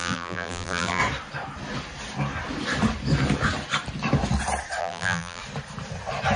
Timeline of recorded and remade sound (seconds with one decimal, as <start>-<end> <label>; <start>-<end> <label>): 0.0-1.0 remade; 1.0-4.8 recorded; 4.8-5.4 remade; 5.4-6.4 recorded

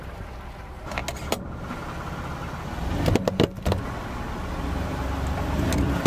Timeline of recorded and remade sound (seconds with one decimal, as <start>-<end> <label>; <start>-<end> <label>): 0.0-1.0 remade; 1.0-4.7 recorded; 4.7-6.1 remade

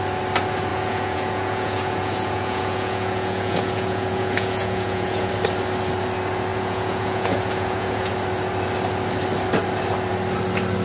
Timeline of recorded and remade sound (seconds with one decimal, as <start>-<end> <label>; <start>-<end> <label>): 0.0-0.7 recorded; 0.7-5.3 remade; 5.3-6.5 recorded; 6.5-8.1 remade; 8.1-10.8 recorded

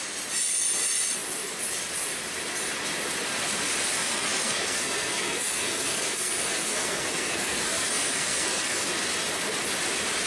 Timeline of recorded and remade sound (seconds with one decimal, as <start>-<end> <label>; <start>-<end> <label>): 0.0-4.0 recorded; 4.0-8.9 remade; 8.9-10.3 recorded

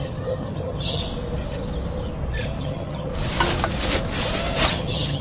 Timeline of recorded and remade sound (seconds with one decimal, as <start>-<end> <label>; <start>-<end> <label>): 0.0-1.0 remade; 1.0-2.6 recorded; 2.6-3.1 remade; 3.1-4.7 recorded; 4.7-5.2 remade

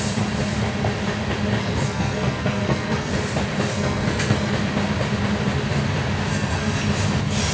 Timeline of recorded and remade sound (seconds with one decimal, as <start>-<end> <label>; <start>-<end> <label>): 0.0-1.6 recorded; 1.6-3.1 remade; 3.1-3.7 recorded; 3.7-4.5 remade; 4.5-6.3 recorded; 6.3-6.8 remade; 6.8-7.5 recorded